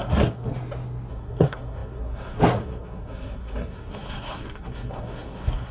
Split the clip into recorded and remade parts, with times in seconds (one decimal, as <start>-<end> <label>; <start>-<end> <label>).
0.0-0.5 remade; 0.5-1.1 recorded; 1.1-5.7 remade